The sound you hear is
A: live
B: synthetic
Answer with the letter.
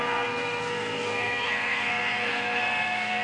B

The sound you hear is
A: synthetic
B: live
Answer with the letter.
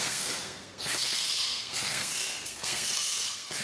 A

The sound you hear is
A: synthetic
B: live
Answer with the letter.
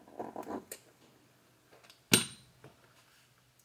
B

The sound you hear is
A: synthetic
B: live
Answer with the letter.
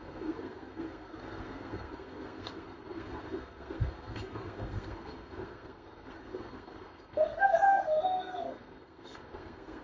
A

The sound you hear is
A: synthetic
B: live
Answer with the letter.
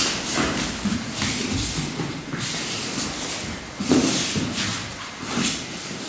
B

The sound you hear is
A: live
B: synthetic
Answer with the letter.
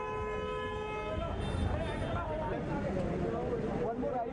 A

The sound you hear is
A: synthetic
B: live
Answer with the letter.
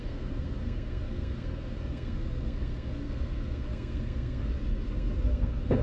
A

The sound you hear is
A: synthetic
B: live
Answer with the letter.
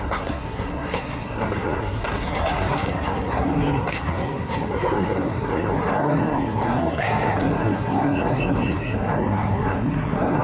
A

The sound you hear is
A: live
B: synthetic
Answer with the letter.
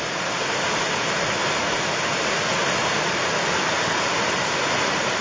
A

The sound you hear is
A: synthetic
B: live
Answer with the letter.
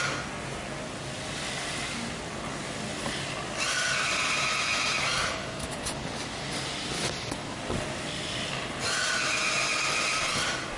B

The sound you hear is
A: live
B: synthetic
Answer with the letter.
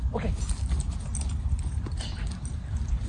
A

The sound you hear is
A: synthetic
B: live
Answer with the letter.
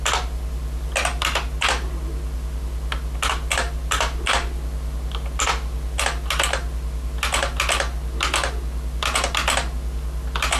B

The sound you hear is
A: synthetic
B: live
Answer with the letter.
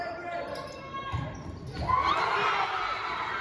B